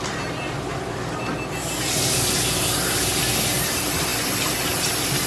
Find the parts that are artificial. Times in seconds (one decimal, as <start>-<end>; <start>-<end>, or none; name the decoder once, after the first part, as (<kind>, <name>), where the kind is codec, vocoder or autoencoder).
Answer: 0.7-3.2 (vocoder, BigVGAN v2)